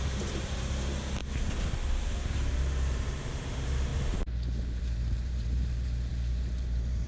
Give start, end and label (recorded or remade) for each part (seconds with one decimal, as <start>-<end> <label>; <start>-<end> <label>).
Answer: 0.0-1.2 remade; 1.2-2.6 recorded; 2.6-3.9 remade; 3.9-4.6 recorded; 4.6-7.1 remade